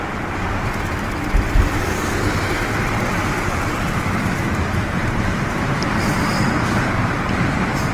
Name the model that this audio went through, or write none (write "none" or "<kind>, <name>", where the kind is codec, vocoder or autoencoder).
vocoder, BigVGAN v2